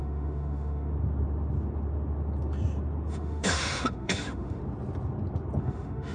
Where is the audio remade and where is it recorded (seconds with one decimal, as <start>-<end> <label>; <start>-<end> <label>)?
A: 0.0-0.9 remade; 0.9-3.1 recorded; 3.1-4.6 remade; 4.6-5.6 recorded; 5.6-6.1 remade